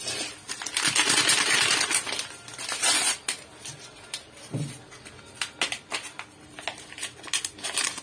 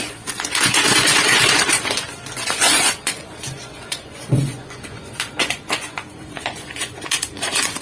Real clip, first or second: first